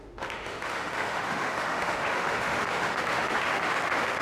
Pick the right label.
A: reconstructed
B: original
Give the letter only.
A